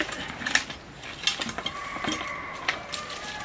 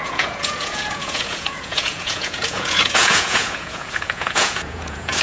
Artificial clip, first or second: second